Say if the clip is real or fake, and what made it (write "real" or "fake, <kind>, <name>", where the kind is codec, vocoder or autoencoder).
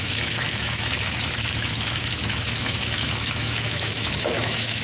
fake, autoencoder, DAC-VAE